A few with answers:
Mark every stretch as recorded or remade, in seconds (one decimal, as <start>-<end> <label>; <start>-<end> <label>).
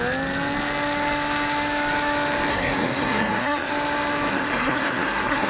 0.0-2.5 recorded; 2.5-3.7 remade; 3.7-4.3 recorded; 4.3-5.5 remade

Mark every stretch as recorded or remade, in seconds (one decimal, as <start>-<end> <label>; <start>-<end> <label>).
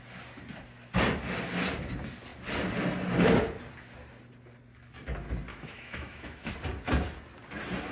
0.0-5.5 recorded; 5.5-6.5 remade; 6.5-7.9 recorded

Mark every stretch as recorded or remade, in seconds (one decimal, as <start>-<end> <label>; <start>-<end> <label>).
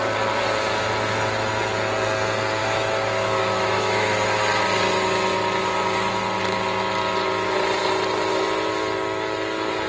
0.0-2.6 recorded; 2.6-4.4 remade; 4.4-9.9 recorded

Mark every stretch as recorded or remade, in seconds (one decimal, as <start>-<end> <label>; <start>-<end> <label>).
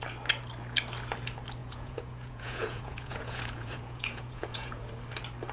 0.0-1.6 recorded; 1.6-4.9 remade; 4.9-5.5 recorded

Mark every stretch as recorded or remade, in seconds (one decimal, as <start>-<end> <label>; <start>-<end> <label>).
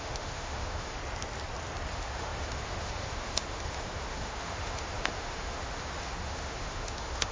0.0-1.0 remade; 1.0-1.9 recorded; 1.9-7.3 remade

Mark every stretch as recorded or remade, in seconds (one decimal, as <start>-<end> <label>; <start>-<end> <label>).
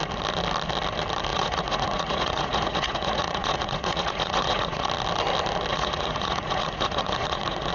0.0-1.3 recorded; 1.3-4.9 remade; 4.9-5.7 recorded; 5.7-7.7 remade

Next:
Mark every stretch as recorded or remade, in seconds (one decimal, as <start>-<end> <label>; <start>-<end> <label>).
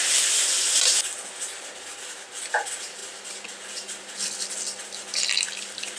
0.0-6.0 recorded